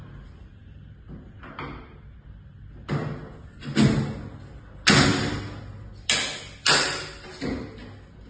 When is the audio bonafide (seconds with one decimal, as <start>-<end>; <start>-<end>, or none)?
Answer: 0.0-8.3